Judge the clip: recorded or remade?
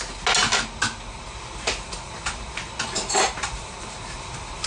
recorded